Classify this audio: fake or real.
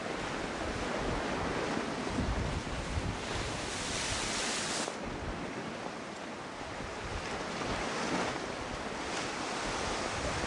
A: real